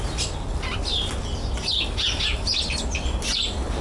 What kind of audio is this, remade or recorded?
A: recorded